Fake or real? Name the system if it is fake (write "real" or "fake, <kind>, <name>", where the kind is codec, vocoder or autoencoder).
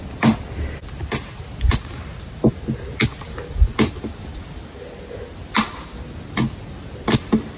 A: real